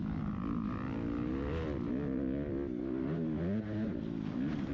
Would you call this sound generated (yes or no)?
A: no